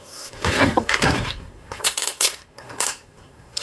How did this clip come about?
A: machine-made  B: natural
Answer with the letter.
A